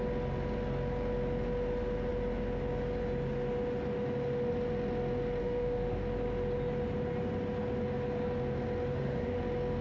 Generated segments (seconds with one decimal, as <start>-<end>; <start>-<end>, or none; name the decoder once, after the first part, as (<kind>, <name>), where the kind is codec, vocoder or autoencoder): 5.4-6.0 (autoencoder, DAC-VAE); 8.9-9.4